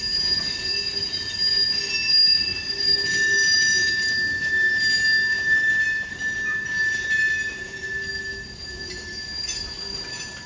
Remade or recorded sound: recorded